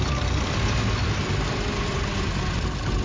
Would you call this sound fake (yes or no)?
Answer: no